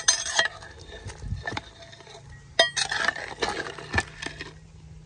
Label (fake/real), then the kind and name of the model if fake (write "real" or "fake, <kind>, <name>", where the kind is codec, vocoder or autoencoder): real